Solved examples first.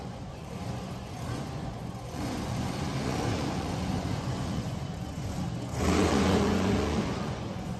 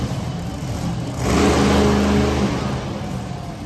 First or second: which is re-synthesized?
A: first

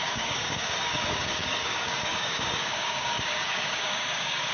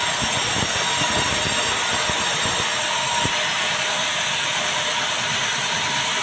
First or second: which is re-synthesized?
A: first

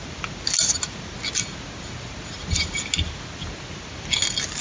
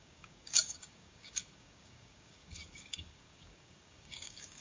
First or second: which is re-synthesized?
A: second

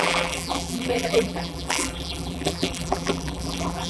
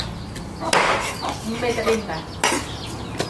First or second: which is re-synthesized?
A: first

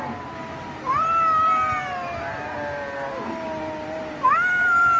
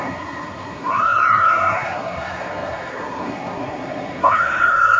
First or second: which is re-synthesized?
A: second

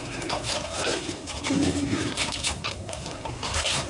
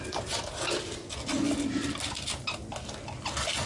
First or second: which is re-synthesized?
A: first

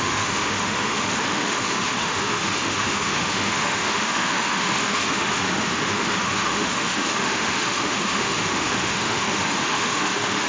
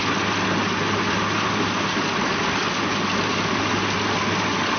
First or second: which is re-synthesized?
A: first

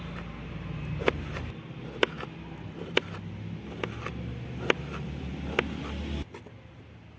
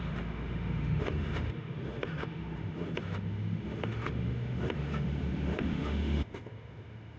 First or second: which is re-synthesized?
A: second